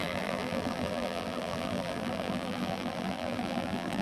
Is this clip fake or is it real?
fake